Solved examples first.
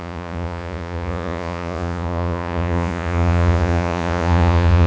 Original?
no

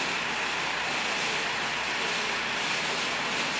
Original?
yes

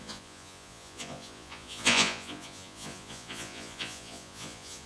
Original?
no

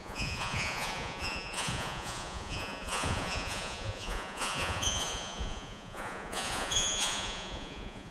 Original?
no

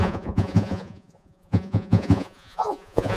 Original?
no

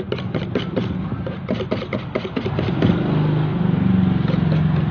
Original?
yes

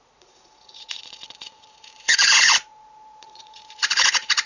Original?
no